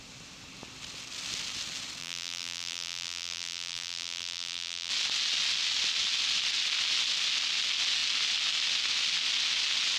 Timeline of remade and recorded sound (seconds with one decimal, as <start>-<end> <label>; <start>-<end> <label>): 0.0-2.0 recorded; 2.0-4.9 remade; 4.9-10.0 recorded